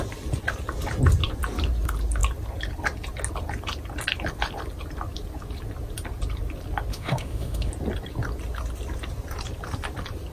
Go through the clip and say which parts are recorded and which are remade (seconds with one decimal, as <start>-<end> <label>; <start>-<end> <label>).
0.0-6.9 recorded; 6.9-7.7 remade; 7.7-10.3 recorded

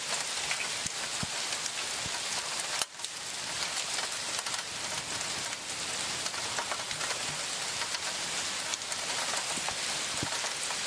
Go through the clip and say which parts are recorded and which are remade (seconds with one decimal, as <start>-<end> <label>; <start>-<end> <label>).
0.0-10.9 recorded

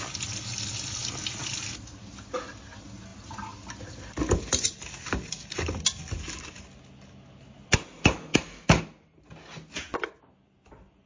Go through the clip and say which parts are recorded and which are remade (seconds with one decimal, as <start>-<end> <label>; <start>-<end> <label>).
0.0-8.3 recorded; 8.3-8.8 remade; 8.8-11.1 recorded

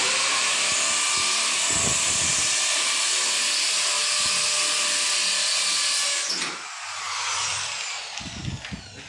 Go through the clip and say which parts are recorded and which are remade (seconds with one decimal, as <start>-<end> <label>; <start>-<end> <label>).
0.0-9.1 recorded

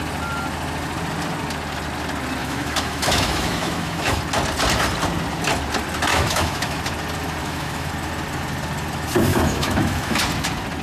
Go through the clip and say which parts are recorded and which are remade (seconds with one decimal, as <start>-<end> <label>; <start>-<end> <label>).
0.0-2.4 recorded; 2.4-4.2 remade; 4.2-6.1 recorded; 6.1-6.8 remade; 6.8-7.4 recorded; 7.4-7.9 remade; 7.9-9.3 recorded; 9.3-10.2 remade; 10.2-10.8 recorded